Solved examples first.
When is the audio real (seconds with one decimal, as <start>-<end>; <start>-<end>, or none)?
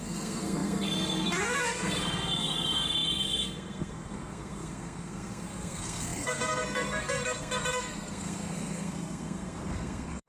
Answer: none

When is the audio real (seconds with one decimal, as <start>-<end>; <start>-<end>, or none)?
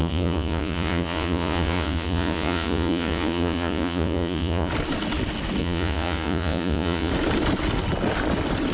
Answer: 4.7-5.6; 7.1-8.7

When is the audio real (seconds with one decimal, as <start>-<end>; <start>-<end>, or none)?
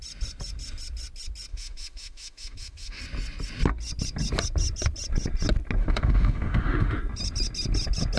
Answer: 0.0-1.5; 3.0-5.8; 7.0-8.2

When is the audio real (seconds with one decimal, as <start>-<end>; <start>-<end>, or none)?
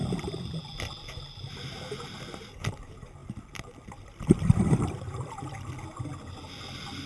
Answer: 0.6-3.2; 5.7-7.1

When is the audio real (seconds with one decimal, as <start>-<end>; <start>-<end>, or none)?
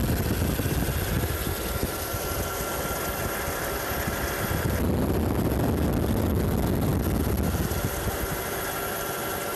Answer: 0.0-9.6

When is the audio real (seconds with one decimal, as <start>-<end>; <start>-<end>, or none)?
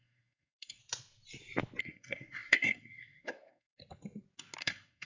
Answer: 0.8-1.8; 3.8-4.6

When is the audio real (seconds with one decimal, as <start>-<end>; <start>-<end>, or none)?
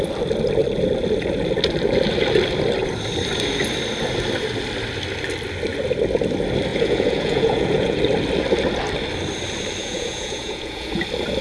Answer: 0.0-6.7; 8.0-9.8; 11.0-11.4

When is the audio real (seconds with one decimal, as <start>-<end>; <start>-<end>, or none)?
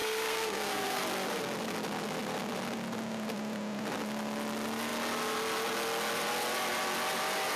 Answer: 1.0-7.6